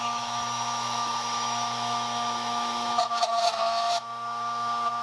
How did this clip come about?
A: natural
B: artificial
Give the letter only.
B